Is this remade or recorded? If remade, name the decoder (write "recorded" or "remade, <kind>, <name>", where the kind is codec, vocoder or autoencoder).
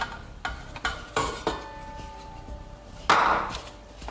recorded